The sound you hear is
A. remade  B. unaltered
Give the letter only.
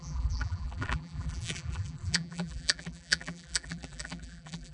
A